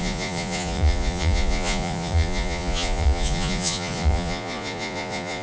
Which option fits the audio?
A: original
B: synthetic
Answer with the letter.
B